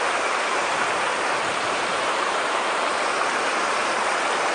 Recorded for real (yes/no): no